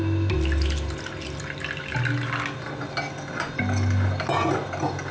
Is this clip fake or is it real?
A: real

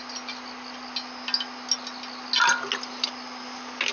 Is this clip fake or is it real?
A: real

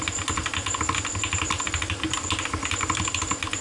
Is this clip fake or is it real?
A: real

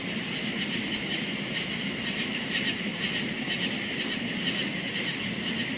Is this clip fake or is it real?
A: real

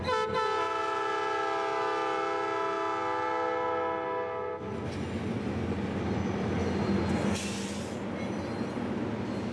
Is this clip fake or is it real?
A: real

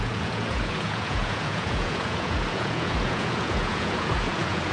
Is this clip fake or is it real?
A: fake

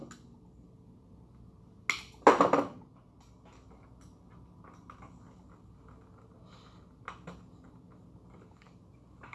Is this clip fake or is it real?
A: real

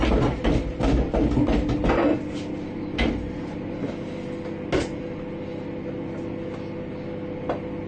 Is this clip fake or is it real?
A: real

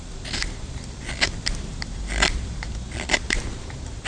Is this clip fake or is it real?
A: real